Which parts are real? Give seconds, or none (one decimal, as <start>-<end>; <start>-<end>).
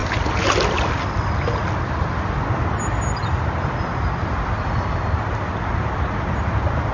0.0-6.9